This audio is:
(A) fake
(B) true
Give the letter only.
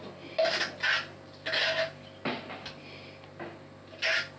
B